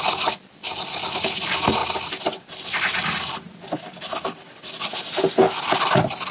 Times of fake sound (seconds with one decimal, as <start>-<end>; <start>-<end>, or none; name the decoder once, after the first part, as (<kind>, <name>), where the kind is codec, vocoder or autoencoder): none